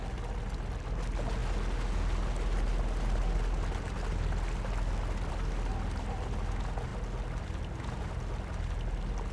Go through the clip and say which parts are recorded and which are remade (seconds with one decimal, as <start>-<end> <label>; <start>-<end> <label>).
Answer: 0.0-9.3 recorded